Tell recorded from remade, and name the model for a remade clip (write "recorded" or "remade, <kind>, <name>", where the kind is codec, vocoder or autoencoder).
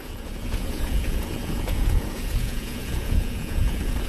remade, vocoder, Vocos